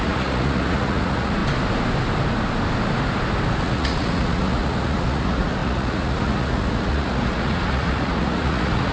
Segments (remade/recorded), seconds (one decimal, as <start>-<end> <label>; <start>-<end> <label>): 0.0-1.4 remade; 1.4-3.6 recorded; 3.6-8.9 remade